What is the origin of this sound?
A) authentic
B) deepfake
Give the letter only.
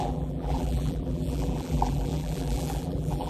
B